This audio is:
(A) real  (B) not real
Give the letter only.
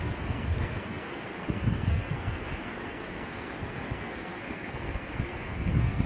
B